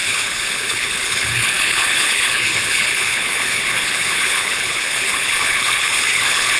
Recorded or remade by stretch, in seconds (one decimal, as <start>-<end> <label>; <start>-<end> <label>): 0.0-6.6 remade